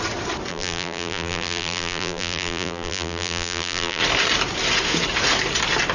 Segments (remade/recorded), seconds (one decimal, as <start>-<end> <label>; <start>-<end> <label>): 0.0-0.5 recorded; 0.5-4.0 remade; 4.0-5.9 recorded